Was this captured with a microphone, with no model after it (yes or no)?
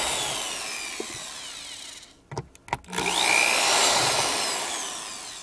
yes